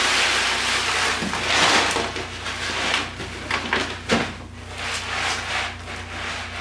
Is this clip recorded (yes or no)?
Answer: yes